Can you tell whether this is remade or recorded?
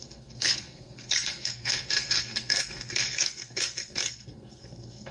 remade